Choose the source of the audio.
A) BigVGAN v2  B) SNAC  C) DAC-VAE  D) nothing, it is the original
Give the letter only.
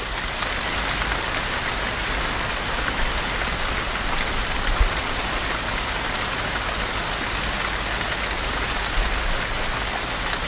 D